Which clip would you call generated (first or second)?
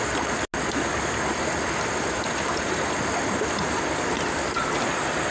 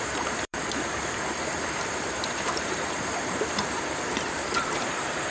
second